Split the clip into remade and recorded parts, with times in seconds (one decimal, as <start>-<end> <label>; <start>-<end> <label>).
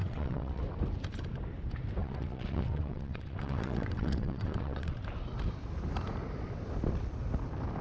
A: 0.0-0.6 remade; 0.6-2.0 recorded; 2.0-5.0 remade; 5.0-7.8 recorded